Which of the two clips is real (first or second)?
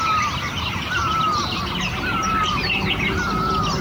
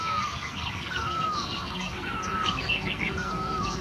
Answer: first